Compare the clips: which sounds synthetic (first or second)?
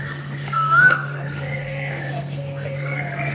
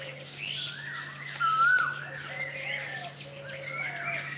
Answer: first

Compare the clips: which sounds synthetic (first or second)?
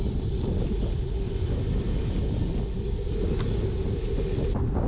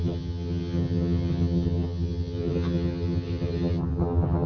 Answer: second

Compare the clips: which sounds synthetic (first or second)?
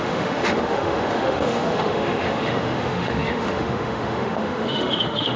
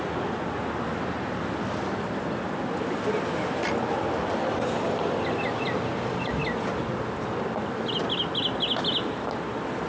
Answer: first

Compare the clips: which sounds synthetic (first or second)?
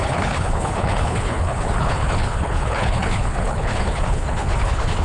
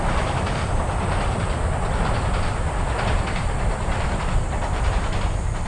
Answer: first